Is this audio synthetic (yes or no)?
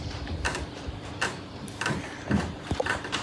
yes